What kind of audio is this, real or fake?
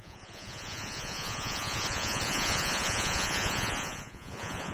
fake